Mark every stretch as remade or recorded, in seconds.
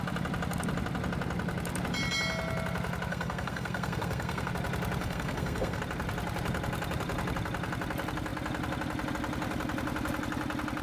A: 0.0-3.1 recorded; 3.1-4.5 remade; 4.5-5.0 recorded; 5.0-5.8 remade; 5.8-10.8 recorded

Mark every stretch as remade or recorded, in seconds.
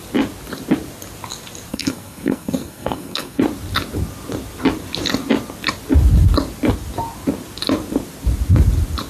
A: 0.0-1.7 recorded; 1.7-3.4 remade; 3.4-9.1 recorded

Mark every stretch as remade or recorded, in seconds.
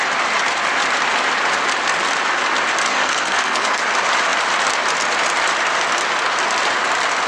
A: 0.0-2.9 recorded; 2.9-3.8 remade; 3.8-7.3 recorded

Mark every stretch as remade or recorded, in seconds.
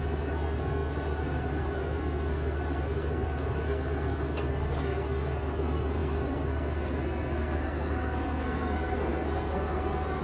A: 0.0-10.2 remade